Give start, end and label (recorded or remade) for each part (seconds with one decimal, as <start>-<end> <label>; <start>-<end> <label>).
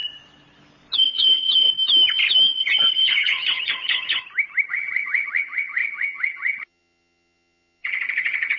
0.0-1.0 recorded; 1.0-1.7 remade; 1.7-2.6 recorded; 2.6-4.2 remade; 4.2-4.7 recorded; 4.7-8.6 remade